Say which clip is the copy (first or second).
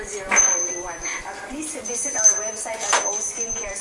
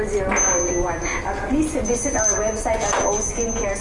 first